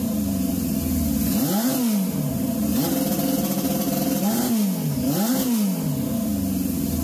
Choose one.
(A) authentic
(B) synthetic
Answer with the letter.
A